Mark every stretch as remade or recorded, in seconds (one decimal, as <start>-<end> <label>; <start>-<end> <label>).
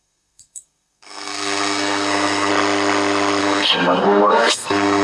0.0-2.5 remade; 2.5-3.4 recorded; 3.4-5.0 remade